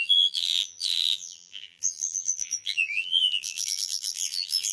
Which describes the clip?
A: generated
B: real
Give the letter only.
A